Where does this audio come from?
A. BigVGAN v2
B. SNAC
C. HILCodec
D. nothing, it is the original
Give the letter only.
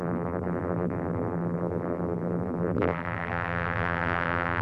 A